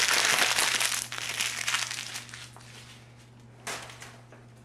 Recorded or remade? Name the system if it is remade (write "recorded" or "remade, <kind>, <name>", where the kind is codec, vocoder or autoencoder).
recorded